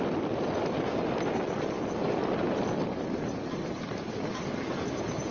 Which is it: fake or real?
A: real